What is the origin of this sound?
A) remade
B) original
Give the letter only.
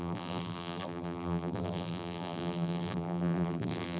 A